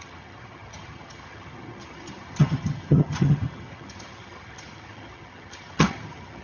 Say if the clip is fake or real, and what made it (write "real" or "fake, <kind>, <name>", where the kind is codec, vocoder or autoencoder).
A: fake, vocoder, HiFi-GAN